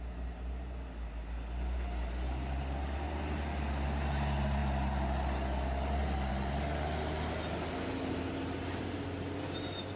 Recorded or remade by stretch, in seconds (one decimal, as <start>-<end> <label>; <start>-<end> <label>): 0.0-10.0 recorded